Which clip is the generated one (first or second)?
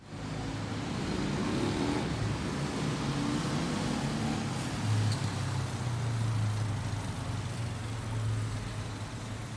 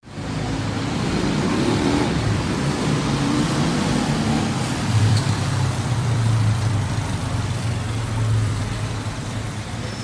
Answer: second